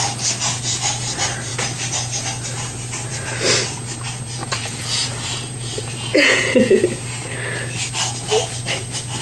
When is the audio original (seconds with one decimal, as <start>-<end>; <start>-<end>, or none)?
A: 0.0-4.4; 6.8-9.2